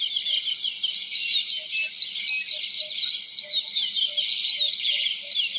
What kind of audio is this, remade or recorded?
recorded